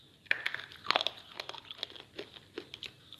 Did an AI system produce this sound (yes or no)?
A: no